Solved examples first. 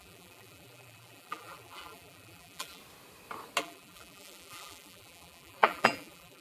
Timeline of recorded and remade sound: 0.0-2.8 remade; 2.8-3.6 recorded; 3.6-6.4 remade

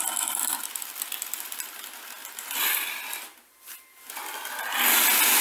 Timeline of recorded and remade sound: 0.0-5.4 recorded

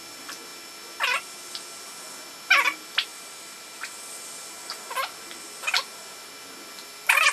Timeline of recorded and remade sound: 0.0-3.1 recorded; 3.1-3.9 remade; 3.9-7.3 recorded